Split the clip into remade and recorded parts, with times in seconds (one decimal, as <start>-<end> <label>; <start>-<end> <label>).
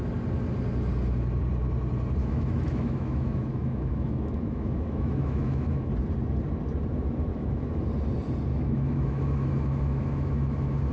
0.0-2.2 recorded; 2.2-5.9 remade; 5.9-7.3 recorded; 7.3-7.8 remade; 7.8-8.5 recorded; 8.5-10.9 remade